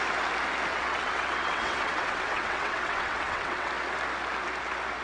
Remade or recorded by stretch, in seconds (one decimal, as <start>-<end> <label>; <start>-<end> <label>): 0.0-0.7 recorded; 0.7-3.7 remade; 3.7-5.0 recorded